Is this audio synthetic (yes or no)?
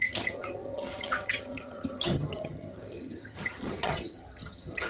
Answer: yes